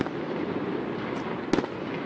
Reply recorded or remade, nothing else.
recorded